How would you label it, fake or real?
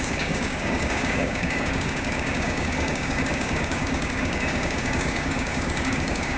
fake